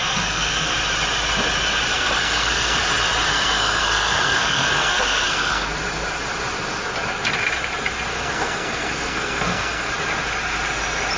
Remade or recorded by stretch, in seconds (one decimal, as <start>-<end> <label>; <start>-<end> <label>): 0.0-0.7 remade; 0.7-1.9 recorded; 1.9-2.8 remade; 2.8-3.3 recorded; 3.3-5.7 remade; 5.7-8.1 recorded; 8.1-9.9 remade; 9.9-11.2 recorded

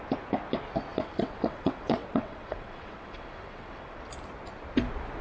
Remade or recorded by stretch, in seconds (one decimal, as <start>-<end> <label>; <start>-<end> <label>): 0.0-0.9 recorded; 0.9-4.0 remade; 4.0-5.2 recorded

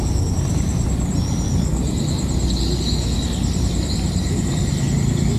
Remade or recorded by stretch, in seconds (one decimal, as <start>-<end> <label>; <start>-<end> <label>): 0.0-5.4 recorded

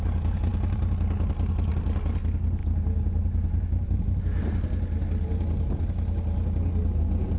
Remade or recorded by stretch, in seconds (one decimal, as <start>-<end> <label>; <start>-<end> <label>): 0.0-7.4 recorded

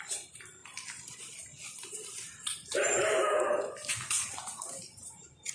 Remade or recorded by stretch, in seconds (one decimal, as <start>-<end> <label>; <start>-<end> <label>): 0.0-5.5 remade

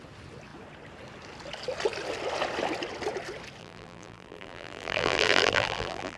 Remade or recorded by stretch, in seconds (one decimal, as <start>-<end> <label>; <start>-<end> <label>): 0.0-3.6 recorded; 3.6-6.2 remade

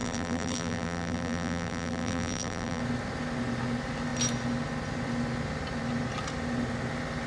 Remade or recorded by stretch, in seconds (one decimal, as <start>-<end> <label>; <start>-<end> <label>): 0.0-2.8 remade; 2.8-7.3 recorded

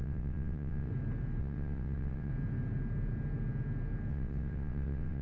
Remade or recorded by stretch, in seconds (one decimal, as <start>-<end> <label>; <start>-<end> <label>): 0.0-0.9 remade; 0.9-1.4 recorded; 1.4-2.3 remade; 2.3-4.1 recorded; 4.1-5.2 remade